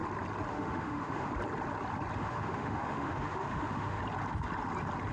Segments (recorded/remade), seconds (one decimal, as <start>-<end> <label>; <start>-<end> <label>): 0.0-0.5 recorded; 0.5-1.3 remade; 1.3-2.2 recorded; 2.2-4.0 remade; 4.0-5.1 recorded